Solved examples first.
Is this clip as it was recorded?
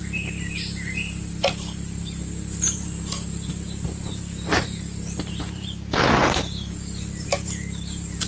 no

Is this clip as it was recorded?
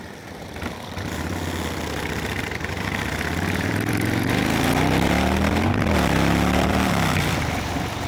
no